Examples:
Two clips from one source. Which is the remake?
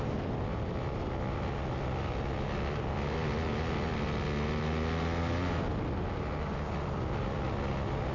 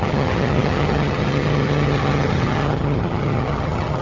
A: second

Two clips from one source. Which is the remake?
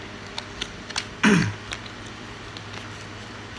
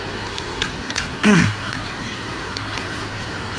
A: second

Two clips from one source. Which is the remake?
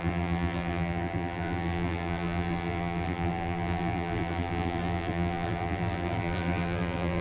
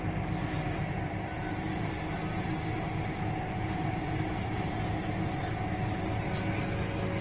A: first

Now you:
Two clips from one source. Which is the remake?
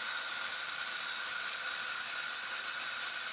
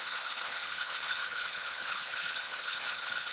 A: second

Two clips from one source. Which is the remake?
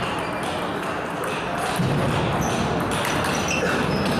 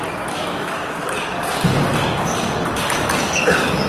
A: second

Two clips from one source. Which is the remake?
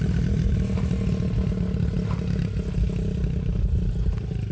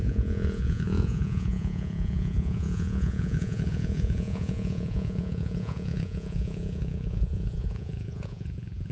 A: second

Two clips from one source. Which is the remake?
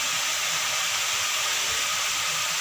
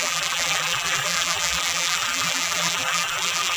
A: second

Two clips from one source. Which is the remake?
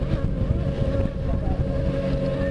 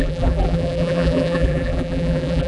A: second